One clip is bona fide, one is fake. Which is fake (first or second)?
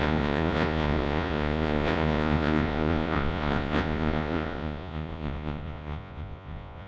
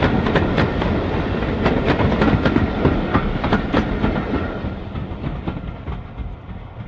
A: first